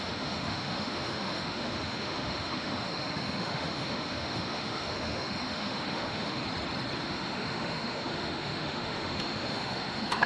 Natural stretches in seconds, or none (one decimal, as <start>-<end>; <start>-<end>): 6.4-7.0